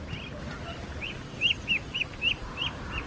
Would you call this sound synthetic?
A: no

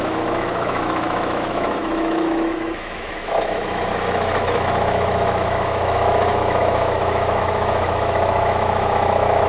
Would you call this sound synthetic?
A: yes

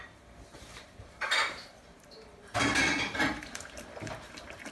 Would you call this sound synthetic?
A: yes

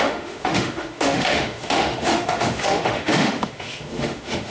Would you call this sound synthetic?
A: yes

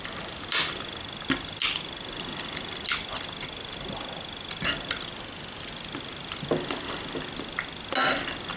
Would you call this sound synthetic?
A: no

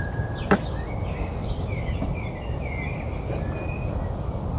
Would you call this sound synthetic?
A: no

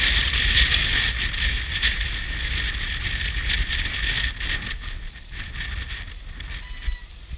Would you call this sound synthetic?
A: no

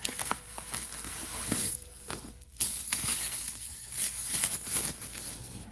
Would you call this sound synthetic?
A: yes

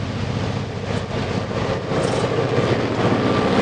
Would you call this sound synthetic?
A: no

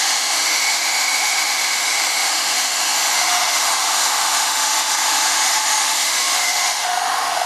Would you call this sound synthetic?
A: yes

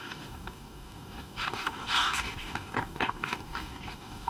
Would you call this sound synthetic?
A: yes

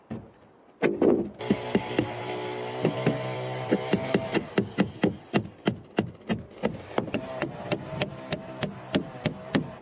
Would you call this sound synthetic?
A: no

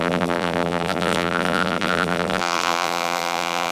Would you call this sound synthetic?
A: yes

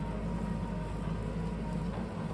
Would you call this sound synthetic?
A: no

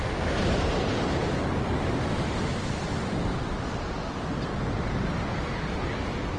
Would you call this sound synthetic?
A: no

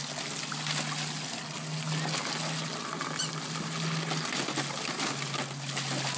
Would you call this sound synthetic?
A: no